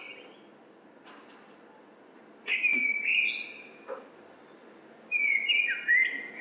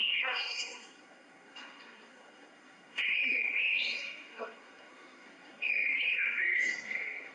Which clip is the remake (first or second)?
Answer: second